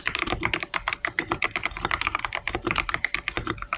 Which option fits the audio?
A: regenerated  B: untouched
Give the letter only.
B